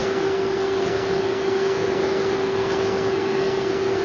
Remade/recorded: remade